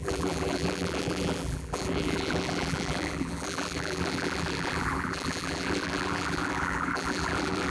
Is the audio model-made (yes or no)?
yes